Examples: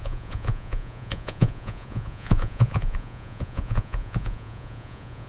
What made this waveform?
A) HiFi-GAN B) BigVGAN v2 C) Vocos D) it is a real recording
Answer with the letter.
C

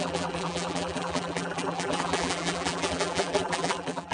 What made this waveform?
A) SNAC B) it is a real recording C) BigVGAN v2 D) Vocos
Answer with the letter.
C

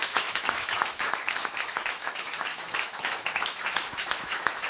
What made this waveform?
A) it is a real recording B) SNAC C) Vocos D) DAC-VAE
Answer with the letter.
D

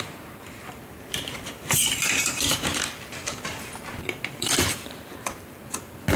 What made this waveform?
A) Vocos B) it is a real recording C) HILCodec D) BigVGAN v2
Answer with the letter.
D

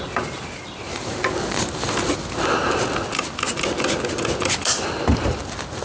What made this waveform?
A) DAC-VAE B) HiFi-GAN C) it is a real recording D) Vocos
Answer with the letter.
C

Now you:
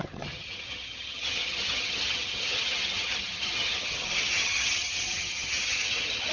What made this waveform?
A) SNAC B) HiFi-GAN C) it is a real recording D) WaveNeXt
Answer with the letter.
B